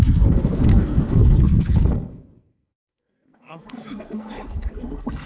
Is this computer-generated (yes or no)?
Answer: yes